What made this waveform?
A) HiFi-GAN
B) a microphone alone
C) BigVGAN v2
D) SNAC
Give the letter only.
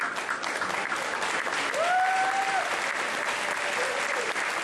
B